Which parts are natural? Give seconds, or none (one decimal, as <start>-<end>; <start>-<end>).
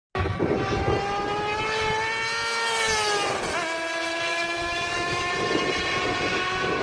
0.0-4.3; 5.3-6.8